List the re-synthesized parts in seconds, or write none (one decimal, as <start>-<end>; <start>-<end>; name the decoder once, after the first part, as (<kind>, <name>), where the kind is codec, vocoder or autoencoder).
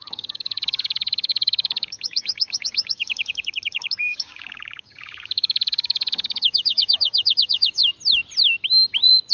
0.0-7.8 (codec, DAC)